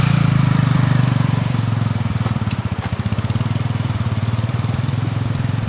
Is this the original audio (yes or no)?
no